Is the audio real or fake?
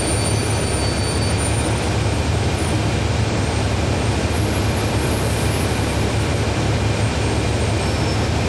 real